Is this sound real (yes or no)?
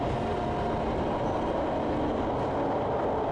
yes